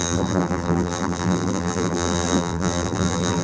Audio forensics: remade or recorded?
remade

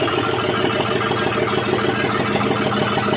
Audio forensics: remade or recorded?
recorded